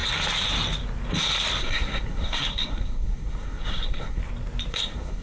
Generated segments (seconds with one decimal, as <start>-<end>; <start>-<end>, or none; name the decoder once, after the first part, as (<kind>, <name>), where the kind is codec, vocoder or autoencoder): 1.6-4.2 (codec, SNAC); 4.7-5.2